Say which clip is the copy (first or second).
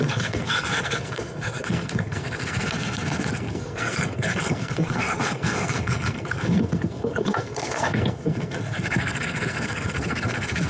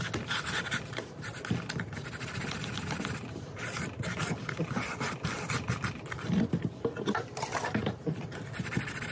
first